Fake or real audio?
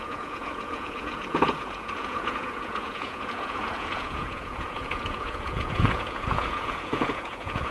fake